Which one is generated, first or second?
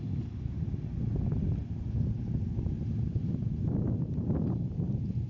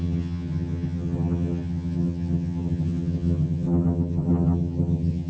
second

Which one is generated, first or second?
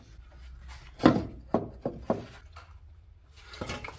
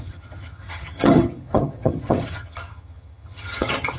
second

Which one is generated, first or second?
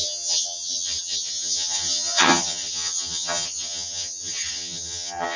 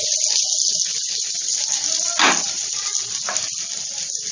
first